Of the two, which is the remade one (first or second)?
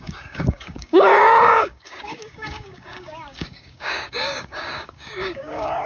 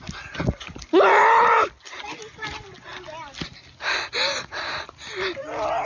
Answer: first